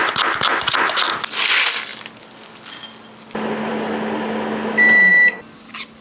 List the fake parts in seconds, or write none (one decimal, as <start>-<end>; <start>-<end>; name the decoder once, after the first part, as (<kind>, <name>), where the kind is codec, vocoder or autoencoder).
none